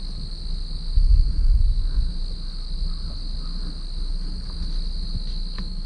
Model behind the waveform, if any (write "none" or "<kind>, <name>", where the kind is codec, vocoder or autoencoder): none